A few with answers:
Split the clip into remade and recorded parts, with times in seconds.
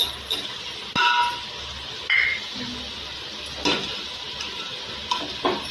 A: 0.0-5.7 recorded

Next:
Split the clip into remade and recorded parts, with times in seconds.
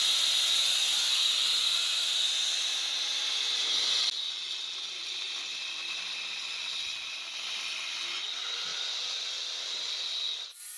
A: 0.0-10.8 recorded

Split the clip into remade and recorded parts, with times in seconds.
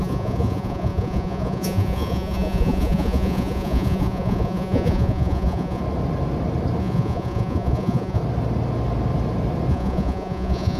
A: 0.0-5.8 remade; 5.8-6.8 recorded; 6.8-8.2 remade; 8.2-9.7 recorded; 9.7-10.8 remade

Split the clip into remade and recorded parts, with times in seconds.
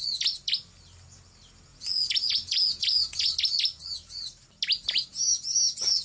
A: 0.0-1.7 recorded; 1.7-3.3 remade; 3.3-6.0 recorded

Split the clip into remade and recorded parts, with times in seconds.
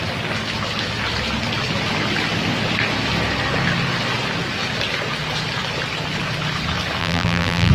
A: 0.0-7.0 recorded; 7.0-7.7 remade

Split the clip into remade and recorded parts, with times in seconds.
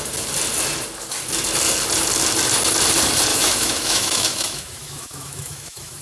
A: 0.0-3.3 recorded; 3.3-6.0 remade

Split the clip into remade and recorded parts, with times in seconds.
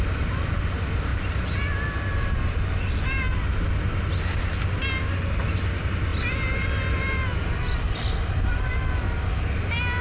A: 0.0-10.0 recorded